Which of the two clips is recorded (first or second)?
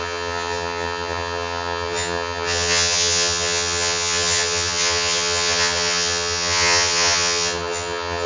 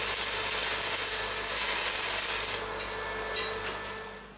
second